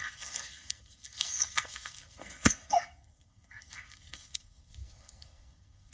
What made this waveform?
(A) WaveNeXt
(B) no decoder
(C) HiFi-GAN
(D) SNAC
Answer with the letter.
D